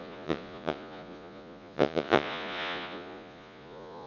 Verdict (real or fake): fake